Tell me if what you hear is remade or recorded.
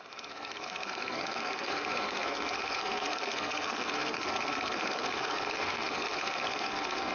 remade